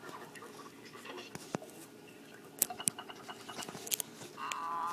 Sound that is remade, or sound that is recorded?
recorded